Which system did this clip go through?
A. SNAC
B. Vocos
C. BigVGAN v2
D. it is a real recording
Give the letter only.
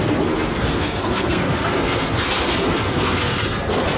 A